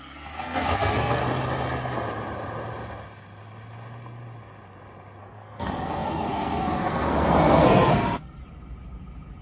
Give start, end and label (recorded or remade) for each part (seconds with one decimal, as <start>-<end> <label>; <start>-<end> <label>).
0.0-1.2 remade; 1.2-5.2 recorded; 5.2-8.4 remade; 8.4-9.4 recorded